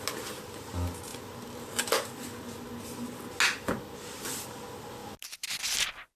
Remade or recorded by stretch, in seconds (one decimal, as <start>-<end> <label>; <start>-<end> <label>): 0.0-6.2 recorded